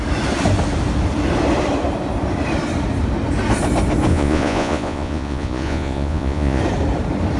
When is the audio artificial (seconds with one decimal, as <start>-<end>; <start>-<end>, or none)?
4.1-6.6